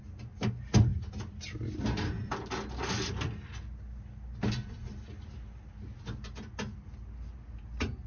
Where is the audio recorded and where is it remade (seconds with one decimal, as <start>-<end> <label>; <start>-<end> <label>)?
0.0-8.1 recorded